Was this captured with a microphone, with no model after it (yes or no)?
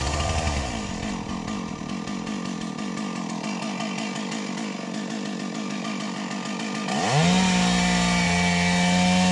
yes